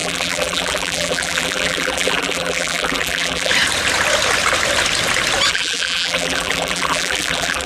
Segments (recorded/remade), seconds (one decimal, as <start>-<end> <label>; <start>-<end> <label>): 0.0-3.5 remade; 3.5-5.5 recorded; 5.5-7.7 remade